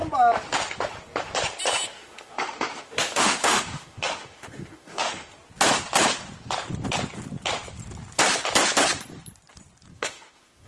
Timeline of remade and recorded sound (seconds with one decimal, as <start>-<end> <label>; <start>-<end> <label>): 0.0-1.9 recorded; 1.9-5.3 remade; 5.3-9.9 recorded; 9.9-10.7 remade